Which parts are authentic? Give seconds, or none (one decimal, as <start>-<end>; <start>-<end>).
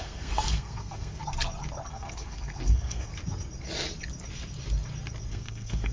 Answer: 1.2-1.9; 3.1-5.3